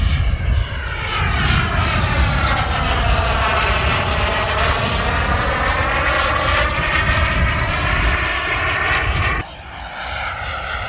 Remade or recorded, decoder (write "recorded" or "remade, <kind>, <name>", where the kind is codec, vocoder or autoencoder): recorded